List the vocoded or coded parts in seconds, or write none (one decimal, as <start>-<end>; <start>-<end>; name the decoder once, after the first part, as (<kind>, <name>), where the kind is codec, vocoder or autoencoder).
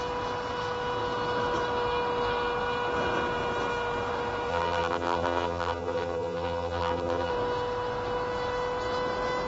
4.5-7.3 (vocoder, BigVGAN v2)